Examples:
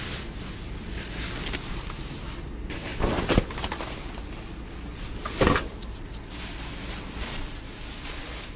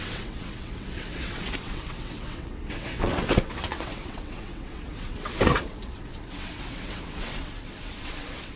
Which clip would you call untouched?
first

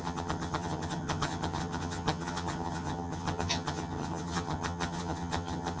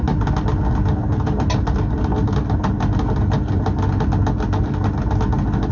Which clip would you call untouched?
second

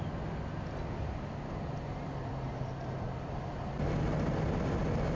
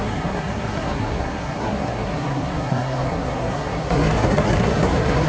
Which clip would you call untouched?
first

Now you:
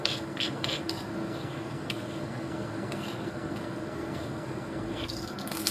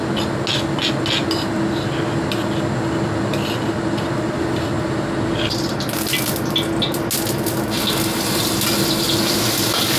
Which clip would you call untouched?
second